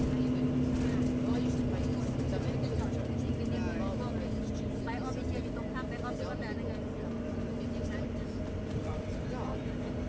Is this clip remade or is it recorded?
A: recorded